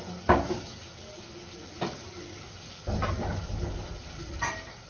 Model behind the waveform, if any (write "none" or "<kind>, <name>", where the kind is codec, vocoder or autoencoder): none